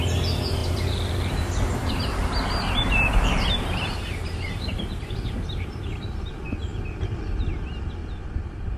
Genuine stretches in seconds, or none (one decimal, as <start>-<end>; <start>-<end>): 0.0-0.6; 5.8-8.0